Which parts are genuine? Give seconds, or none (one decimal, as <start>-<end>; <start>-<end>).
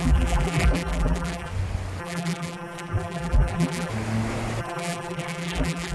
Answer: 1.5-2.0; 3.9-4.6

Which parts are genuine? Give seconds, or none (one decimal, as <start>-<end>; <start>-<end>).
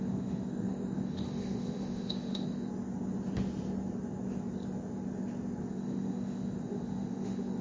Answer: 2.7-5.7